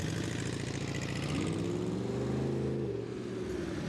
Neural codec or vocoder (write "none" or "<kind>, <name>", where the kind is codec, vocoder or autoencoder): none